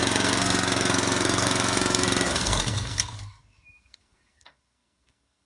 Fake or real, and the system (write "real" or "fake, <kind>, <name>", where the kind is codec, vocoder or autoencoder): fake, codec, SNAC